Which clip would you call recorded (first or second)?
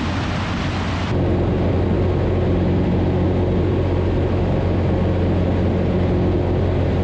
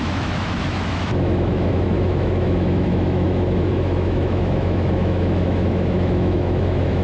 first